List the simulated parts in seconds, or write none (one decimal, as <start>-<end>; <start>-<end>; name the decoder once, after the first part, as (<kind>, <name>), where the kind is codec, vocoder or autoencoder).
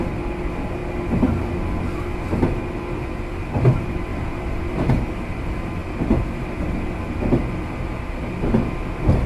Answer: 4.1-4.9 (vocoder, BigVGAN v2)